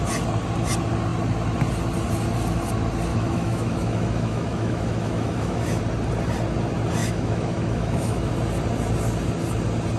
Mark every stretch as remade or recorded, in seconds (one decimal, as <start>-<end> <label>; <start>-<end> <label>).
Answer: 0.0-3.1 recorded; 3.1-5.8 remade; 5.8-7.0 recorded; 7.0-8.3 remade; 8.3-10.0 recorded